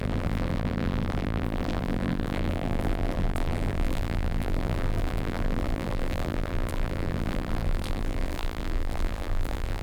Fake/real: fake